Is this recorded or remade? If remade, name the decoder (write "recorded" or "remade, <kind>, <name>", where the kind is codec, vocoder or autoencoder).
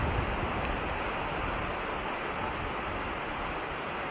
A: recorded